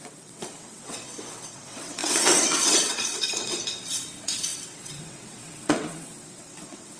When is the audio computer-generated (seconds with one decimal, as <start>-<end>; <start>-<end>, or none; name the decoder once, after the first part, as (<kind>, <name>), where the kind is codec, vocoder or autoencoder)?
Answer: 0.0-7.0 (vocoder, WaveNeXt)